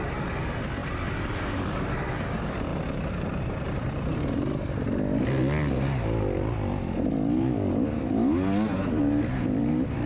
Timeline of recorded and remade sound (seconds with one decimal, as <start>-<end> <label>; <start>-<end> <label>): 0.0-10.1 recorded